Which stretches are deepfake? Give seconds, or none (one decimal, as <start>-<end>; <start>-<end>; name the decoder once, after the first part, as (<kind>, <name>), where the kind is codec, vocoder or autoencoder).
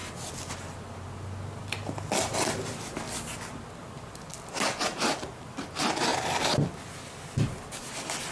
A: none